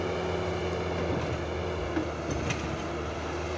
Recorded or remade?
recorded